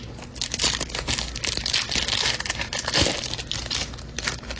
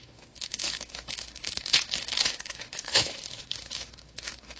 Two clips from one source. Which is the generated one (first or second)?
second